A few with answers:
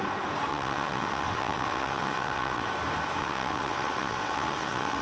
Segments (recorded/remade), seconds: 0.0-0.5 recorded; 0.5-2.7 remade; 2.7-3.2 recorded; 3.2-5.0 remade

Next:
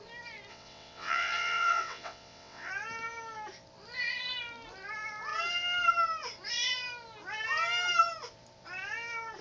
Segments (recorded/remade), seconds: 0.0-0.5 recorded; 0.5-2.7 remade; 2.7-9.4 recorded

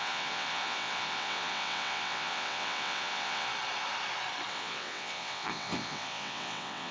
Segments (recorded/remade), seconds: 0.0-3.5 remade; 3.5-4.5 recorded; 4.5-6.9 remade

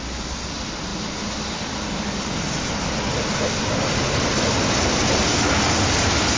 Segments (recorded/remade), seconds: 0.0-6.4 recorded